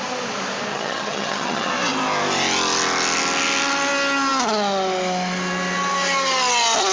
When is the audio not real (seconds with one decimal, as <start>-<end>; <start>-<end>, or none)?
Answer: 0.7-1.7